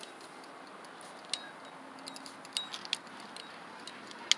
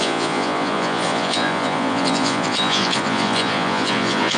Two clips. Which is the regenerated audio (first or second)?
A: second